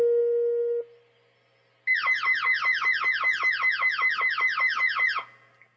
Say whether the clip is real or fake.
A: real